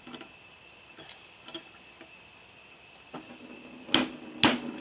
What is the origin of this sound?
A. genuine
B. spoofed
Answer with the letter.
A